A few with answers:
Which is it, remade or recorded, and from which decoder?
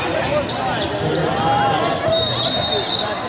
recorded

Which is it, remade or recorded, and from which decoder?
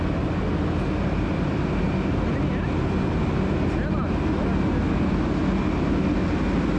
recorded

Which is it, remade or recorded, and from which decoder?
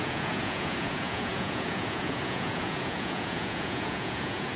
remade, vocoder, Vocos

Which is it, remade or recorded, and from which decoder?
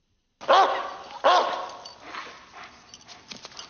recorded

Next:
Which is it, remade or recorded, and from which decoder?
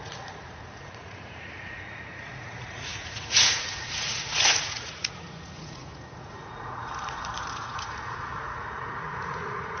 remade, vocoder, Vocos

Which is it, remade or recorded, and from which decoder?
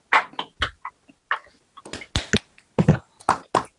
recorded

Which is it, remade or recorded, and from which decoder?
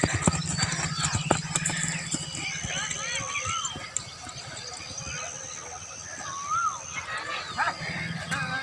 recorded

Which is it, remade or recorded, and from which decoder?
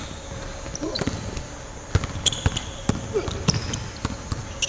recorded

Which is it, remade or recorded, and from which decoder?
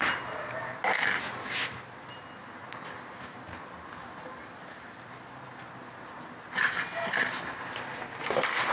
recorded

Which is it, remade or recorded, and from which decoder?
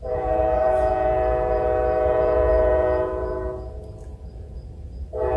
remade, vocoder, Vocos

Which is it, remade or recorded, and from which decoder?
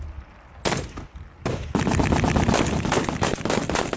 recorded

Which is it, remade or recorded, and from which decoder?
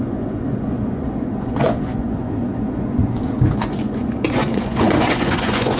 remade, vocoder, Vocos